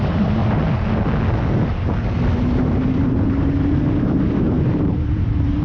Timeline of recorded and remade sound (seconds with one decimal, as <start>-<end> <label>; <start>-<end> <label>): 0.0-0.4 remade; 0.4-2.5 recorded; 2.5-5.6 remade

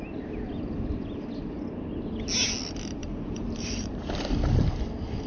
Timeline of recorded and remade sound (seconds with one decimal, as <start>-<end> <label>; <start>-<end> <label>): 0.0-3.0 recorded; 3.0-4.1 remade; 4.1-5.3 recorded

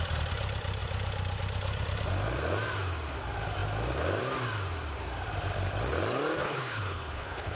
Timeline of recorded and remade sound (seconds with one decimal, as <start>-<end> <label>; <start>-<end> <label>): 0.0-6.4 recorded; 6.4-7.6 remade

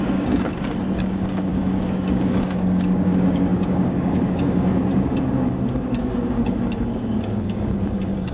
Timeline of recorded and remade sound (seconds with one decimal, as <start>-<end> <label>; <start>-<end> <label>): 0.0-0.5 remade; 0.5-1.0 recorded; 1.0-8.3 remade